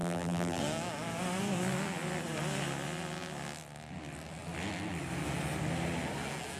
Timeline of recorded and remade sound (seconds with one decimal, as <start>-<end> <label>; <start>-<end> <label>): 0.0-0.6 remade; 0.6-6.6 recorded

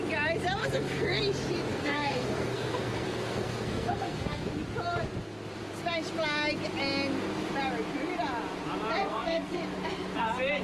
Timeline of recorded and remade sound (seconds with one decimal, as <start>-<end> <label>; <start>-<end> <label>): 0.0-0.6 recorded; 0.6-1.2 remade; 1.2-1.7 recorded; 1.7-4.5 remade; 4.5-9.0 recorded; 9.0-9.6 remade; 9.6-10.6 recorded

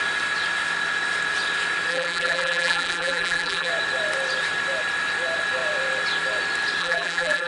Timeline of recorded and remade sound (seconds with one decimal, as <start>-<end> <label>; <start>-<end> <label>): 0.0-1.9 recorded; 1.9-3.7 remade; 3.7-6.8 recorded; 6.8-7.5 remade

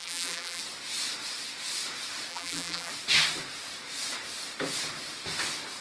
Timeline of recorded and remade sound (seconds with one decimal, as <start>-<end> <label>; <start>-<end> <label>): 0.0-0.6 remade; 0.6-2.3 recorded; 2.3-2.9 remade; 2.9-5.8 recorded